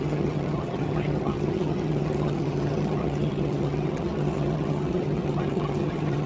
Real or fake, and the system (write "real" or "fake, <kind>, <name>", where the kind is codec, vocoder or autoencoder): fake, vocoder, HiFi-GAN